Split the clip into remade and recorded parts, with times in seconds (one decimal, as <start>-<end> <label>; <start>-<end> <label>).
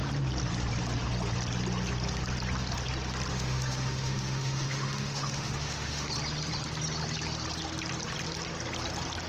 0.0-3.3 recorded; 3.3-6.1 remade; 6.1-9.3 recorded